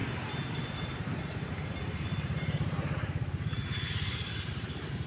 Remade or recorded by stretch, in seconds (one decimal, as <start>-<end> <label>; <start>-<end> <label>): 0.0-5.1 remade